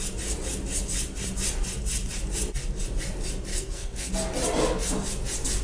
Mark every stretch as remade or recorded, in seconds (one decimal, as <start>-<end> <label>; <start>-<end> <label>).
0.0-3.5 recorded; 3.5-4.1 remade; 4.1-5.6 recorded